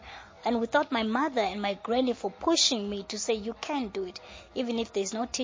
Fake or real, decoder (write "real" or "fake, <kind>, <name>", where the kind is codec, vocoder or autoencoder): real